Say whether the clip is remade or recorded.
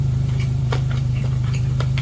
remade